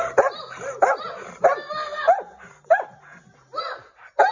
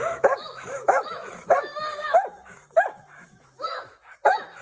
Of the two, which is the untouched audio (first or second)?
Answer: first